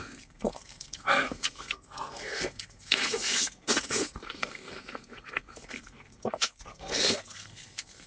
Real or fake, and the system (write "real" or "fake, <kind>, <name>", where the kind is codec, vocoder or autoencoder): fake, codec, SNAC